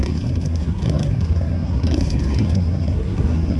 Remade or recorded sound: remade